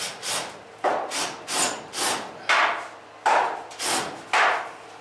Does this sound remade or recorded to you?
recorded